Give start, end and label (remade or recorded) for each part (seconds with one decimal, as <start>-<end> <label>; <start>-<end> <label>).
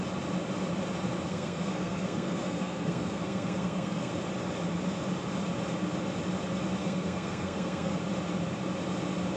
0.0-1.3 recorded; 1.3-4.1 remade; 4.1-6.8 recorded; 6.8-8.0 remade; 8.0-9.4 recorded